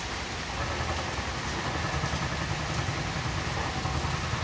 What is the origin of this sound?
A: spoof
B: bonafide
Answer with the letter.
B